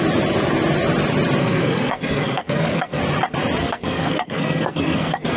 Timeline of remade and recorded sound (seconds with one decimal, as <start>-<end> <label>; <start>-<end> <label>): 0.0-1.4 recorded; 1.4-3.0 remade; 3.0-3.6 recorded; 3.6-5.4 remade